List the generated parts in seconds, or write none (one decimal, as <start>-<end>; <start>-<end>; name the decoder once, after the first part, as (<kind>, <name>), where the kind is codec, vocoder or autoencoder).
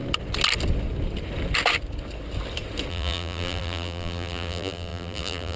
2.9-5.6 (vocoder, BigVGAN v2)